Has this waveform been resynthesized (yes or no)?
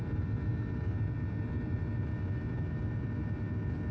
yes